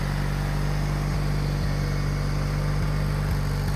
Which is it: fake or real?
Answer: real